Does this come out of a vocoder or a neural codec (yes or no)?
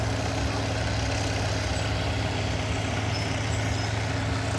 no